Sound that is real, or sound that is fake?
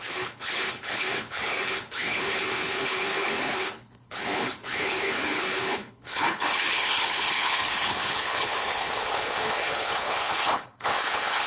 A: fake